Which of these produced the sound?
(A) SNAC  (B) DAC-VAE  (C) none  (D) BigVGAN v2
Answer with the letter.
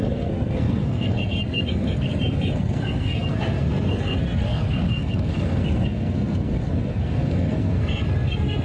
A